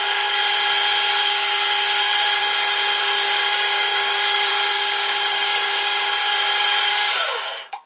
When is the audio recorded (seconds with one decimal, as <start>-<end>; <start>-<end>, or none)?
0.4-1.2; 2.4-3.0